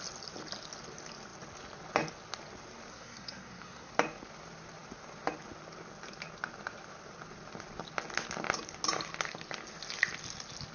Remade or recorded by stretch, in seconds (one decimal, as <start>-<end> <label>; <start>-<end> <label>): 0.0-2.9 recorded; 2.9-3.9 remade; 3.9-10.7 recorded